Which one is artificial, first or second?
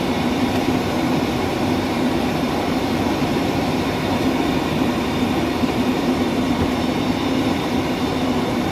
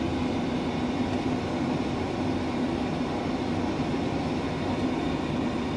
first